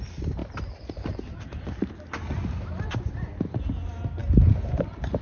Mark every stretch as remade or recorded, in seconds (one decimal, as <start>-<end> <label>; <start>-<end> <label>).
0.0-0.4 recorded; 0.4-3.4 remade; 3.4-5.2 recorded